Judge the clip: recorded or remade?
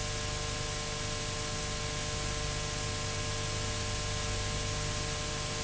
recorded